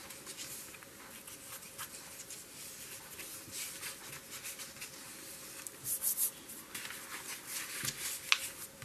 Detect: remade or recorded recorded